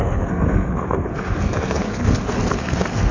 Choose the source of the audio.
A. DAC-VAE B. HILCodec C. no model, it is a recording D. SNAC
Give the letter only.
D